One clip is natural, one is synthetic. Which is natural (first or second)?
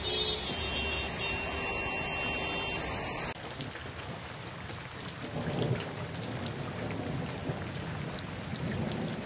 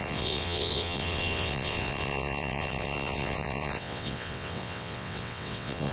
first